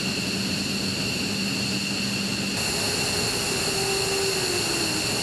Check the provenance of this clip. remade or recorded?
recorded